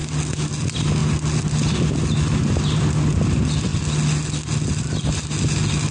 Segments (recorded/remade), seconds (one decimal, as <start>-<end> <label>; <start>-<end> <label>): 0.0-5.9 recorded